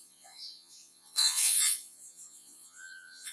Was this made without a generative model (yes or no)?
no